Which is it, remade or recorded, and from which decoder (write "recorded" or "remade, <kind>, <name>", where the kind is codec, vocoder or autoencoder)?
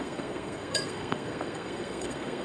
remade, codec, SNAC